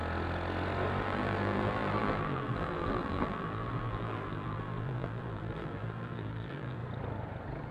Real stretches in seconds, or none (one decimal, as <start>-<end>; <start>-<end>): 0.0-1.0; 6.8-7.7